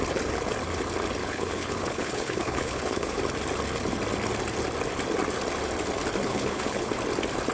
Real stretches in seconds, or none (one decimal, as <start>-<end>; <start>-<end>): 0.0-1.2; 3.2-6.3; 6.9-7.5